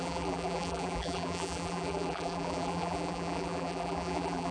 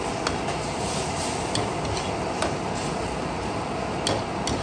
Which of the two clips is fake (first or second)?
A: first